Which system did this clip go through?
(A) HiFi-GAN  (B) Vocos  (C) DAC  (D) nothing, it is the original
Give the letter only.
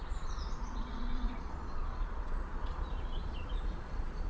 B